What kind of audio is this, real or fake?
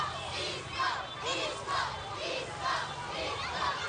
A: fake